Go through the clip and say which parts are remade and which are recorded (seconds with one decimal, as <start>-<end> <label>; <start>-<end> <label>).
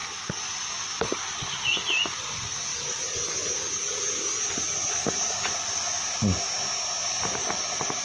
0.0-7.0 recorded; 7.0-8.0 remade